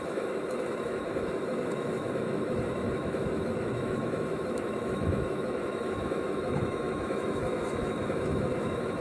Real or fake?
fake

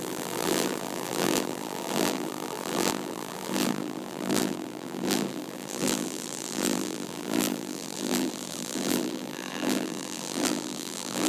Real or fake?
fake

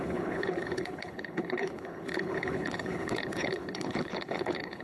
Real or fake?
fake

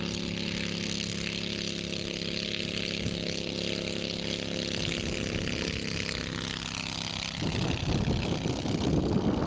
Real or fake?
real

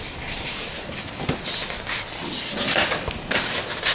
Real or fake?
real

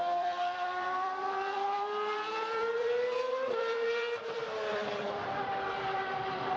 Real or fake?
fake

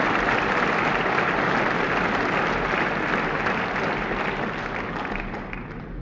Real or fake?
real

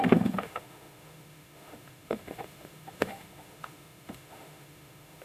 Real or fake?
fake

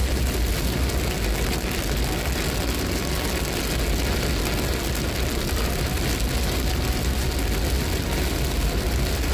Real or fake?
real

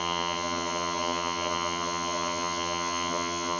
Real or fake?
fake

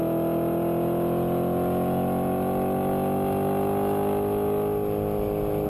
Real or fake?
real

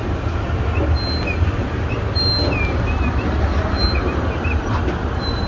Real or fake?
real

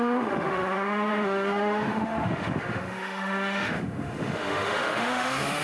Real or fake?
fake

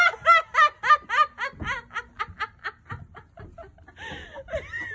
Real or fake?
real